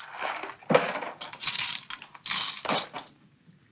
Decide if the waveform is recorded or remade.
recorded